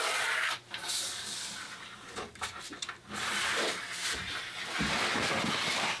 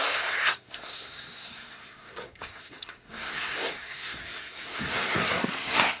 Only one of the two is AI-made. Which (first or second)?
second